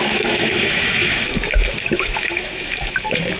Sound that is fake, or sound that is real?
fake